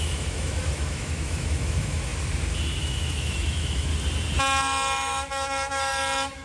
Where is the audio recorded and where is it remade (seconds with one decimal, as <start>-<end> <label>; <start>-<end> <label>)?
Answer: 0.0-2.1 remade; 2.1-2.8 recorded; 2.8-3.9 remade; 3.9-4.4 recorded; 4.4-6.4 remade